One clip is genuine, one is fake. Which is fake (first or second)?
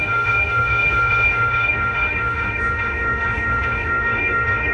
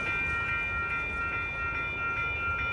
first